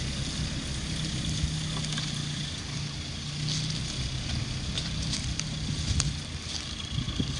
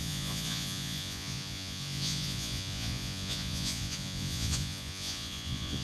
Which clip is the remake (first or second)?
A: second